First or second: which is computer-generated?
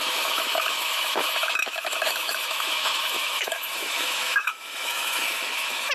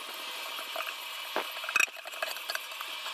first